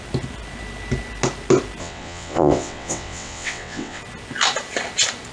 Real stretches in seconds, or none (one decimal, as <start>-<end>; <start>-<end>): 0.0-1.8; 4.0-5.3